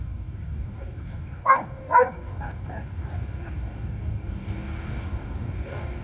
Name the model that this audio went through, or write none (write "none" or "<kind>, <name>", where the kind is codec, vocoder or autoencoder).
codec, DAC